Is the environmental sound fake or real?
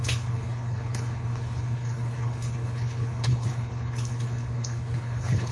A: fake